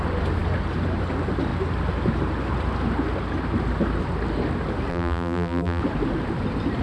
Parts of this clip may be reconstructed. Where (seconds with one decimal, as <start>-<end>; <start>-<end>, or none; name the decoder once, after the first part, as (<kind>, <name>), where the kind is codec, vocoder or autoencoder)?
4.9-5.8 (vocoder, BigVGAN v2)